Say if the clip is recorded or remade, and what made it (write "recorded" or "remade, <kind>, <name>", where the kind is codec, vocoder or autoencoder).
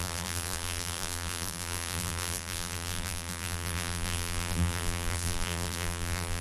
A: remade, vocoder, BigVGAN v2